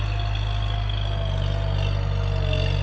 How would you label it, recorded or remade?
recorded